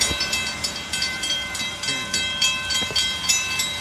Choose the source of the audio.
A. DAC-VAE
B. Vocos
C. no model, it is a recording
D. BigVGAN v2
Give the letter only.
D